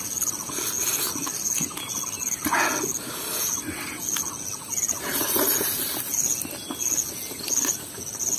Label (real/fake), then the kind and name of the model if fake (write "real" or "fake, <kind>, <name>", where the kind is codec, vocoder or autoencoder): real